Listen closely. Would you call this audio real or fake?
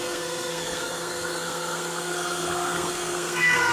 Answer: fake